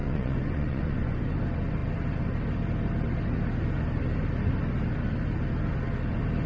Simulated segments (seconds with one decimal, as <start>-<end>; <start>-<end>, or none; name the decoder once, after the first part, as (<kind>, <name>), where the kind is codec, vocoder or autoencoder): 0.0-1.2 (vocoder, Vocos)